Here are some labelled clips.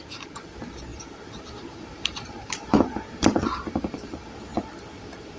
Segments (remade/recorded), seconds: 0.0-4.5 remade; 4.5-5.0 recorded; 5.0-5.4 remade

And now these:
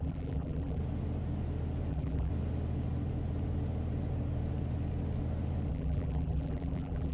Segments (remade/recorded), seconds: 0.0-0.8 remade; 0.8-1.9 recorded; 1.9-2.3 remade; 2.3-5.7 recorded; 5.7-7.1 remade

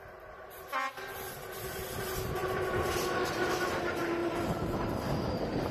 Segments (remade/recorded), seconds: 0.0-4.2 recorded; 4.2-5.7 remade

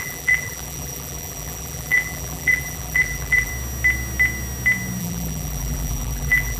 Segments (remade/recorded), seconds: 0.0-3.5 remade; 3.5-5.0 recorded; 5.0-6.6 remade

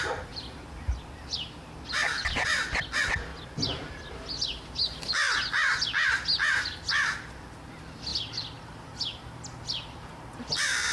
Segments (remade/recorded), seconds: 0.0-10.9 recorded

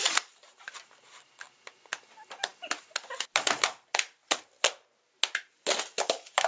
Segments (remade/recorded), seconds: 0.0-1.3 remade; 1.3-6.5 recorded